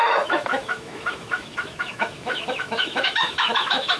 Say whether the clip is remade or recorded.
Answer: remade